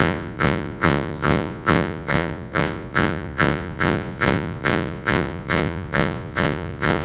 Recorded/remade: remade